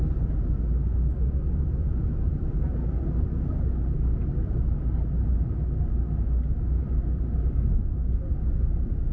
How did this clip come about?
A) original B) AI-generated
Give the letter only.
A